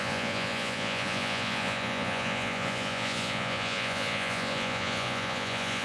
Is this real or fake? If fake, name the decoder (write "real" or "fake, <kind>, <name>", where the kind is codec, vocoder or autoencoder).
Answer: fake, vocoder, Vocos